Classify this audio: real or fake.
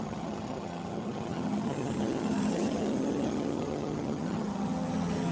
fake